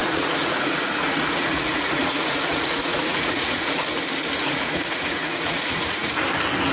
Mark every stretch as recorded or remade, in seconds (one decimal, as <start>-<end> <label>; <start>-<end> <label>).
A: 0.0-3.8 remade; 3.8-4.4 recorded; 4.4-6.1 remade; 6.1-6.7 recorded

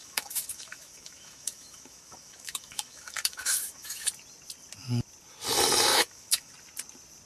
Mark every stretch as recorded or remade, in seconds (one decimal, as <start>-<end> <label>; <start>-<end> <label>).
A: 0.0-4.1 remade; 4.1-5.9 recorded; 5.9-6.5 remade; 6.5-7.3 recorded

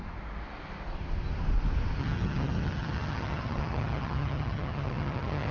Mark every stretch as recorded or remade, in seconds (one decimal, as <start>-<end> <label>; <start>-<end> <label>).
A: 0.0-2.0 recorded; 2.0-5.5 remade

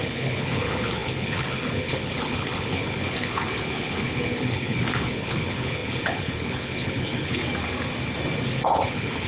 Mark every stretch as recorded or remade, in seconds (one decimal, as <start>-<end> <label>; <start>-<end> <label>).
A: 0.0-7.4 remade; 7.4-8.5 recorded; 8.5-9.3 remade

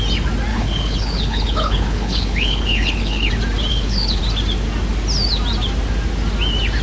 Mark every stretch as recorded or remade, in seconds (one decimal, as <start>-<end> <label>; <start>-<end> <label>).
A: 0.0-0.5 recorded; 0.5-3.3 remade; 3.3-3.7 recorded; 3.7-4.2 remade; 4.2-6.8 recorded

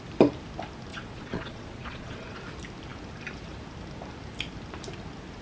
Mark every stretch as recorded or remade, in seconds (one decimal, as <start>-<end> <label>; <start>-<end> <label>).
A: 0.0-0.9 recorded; 0.9-2.4 remade; 2.4-5.4 recorded

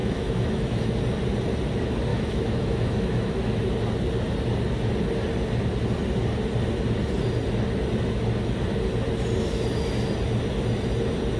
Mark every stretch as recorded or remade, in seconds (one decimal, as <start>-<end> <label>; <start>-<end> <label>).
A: 0.0-1.0 remade; 1.0-2.1 recorded; 2.1-3.4 remade; 3.4-11.4 recorded